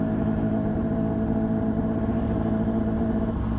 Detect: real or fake fake